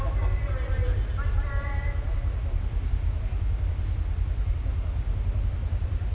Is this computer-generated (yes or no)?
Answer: no